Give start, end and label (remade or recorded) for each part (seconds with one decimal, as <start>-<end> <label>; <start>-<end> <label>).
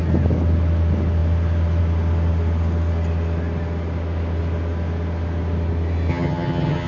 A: 0.0-6.1 recorded; 6.1-6.9 remade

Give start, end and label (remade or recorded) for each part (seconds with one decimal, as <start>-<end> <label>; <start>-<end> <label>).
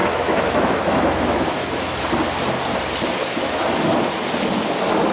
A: 0.0-2.0 remade; 2.0-3.2 recorded; 3.2-3.8 remade; 3.8-5.1 recorded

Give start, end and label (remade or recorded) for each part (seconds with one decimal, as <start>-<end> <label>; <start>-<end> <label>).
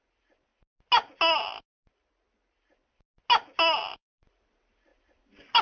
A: 0.0-0.5 remade; 0.5-3.9 recorded; 3.9-4.9 remade; 4.9-5.6 recorded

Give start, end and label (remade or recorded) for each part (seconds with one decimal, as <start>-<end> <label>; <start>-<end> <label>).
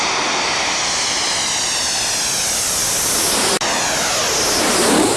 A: 0.0-5.2 recorded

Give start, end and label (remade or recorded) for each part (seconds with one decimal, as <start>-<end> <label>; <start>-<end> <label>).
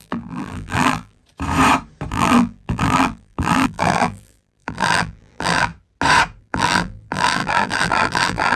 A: 0.0-1.2 remade; 1.2-2.1 recorded; 2.1-5.7 remade; 5.7-6.4 recorded; 6.4-8.6 remade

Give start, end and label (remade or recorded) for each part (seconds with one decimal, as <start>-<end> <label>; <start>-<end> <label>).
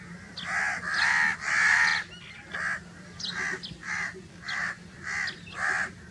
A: 0.0-6.1 recorded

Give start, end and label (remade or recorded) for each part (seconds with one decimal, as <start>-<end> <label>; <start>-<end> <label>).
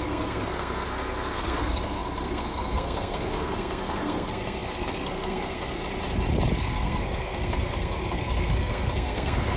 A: 0.0-5.8 remade; 5.8-6.6 recorded; 6.6-9.6 remade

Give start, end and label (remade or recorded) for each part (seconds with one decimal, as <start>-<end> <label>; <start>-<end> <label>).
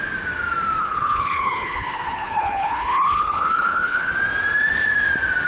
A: 0.0-0.8 recorded; 0.8-4.1 remade; 4.1-5.5 recorded